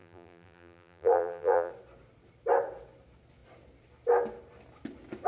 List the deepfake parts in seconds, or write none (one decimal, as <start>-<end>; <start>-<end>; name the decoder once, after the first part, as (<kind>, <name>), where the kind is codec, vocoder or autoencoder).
0.0-1.7 (vocoder, BigVGAN v2)